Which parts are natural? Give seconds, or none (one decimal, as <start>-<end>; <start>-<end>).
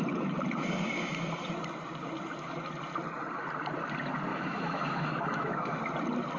0.0-4.3; 5.8-6.4